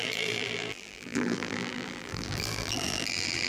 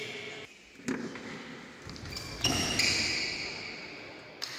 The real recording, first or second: second